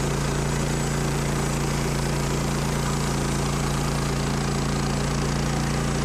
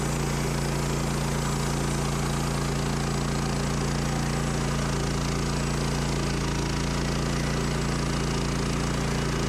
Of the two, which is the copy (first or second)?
first